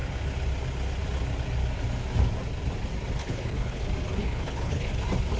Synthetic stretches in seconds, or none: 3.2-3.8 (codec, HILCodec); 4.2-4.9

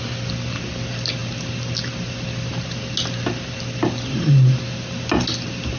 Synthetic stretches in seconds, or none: none

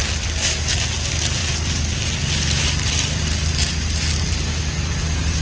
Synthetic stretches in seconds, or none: none

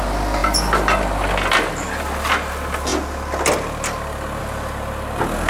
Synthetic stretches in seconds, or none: none

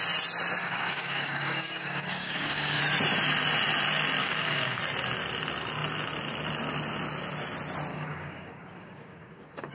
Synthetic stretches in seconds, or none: 0.6-2.8 (codec, DAC); 4.2-4.8; 7.9-9.7

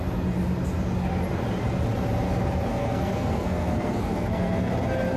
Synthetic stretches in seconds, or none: 2.7-4.7 (codec, SNAC)

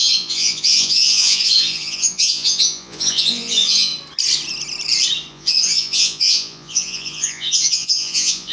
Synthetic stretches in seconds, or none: 0.0-3.9 (vocoder, Vocos); 5.3-8.5

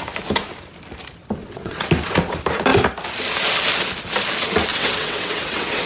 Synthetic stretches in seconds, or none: 1.4-1.9 (vocoder, WaveNeXt); 4.7-5.9